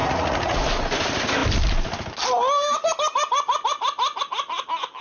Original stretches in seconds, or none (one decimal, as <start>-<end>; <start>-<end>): 0.6-5.0